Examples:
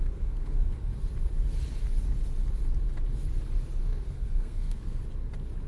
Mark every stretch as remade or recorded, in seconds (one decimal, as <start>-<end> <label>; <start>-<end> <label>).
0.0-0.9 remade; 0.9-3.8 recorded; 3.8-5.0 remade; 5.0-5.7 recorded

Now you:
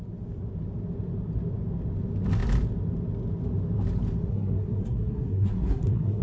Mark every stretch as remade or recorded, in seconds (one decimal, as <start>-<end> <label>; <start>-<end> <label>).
0.0-4.3 recorded; 4.3-6.2 remade

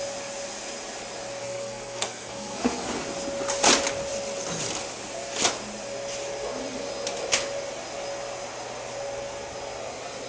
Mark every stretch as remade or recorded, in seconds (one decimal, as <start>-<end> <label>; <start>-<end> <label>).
0.0-1.4 recorded; 1.4-2.9 remade; 2.9-10.3 recorded

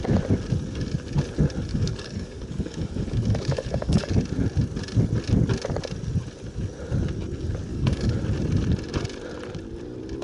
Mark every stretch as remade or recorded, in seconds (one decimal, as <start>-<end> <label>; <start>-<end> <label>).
0.0-1.7 recorded; 1.7-4.2 remade; 4.2-7.7 recorded; 7.7-8.2 remade; 8.2-10.2 recorded